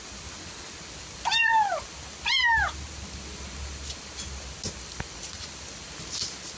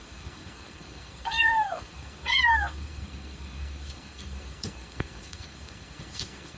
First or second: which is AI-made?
second